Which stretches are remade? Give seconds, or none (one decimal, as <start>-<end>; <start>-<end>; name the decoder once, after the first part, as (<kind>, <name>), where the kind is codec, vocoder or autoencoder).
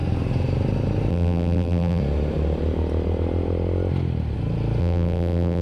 1.1-2.0 (vocoder, BigVGAN v2); 4.8-5.6